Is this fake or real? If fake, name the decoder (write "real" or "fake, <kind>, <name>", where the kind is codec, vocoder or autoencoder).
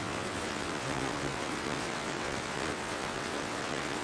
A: fake, vocoder, WaveNeXt